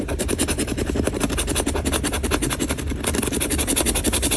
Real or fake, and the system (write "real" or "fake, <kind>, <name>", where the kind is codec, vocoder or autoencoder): real